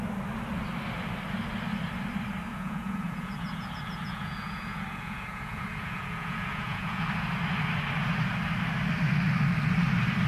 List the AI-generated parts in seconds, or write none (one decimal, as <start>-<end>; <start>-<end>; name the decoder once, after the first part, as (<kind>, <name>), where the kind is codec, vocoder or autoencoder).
2.5-7.0 (vocoder, Vocos)